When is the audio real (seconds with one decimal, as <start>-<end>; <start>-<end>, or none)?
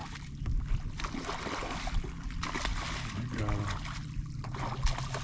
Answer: 0.0-5.2